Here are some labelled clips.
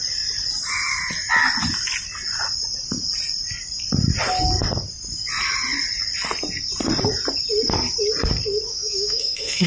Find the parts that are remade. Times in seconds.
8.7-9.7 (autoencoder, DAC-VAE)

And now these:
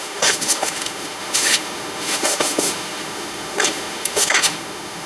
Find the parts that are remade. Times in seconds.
0.0-5.1 (autoencoder, DAC-VAE)

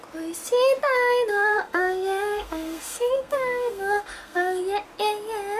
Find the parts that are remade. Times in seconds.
1.3-4.6 (codec, SNAC)

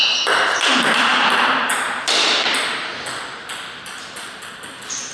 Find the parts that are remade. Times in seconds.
1.1-1.7 (vocoder, BigVGAN v2)

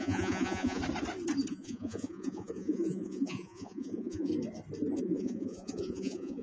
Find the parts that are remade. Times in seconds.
0.0-0.8 (vocoder, Vocos); 1.5-4.3; 5.0-6.4

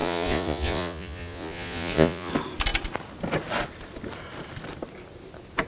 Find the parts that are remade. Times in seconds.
0.0-2.3 (vocoder, Vocos)

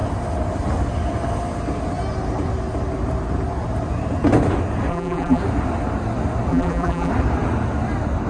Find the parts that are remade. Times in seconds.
4.9-5.4 (vocoder, BigVGAN v2); 6.5-7.1

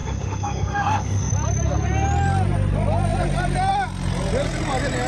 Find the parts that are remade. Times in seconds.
0.0-1.3 (autoencoder, DAC-VAE)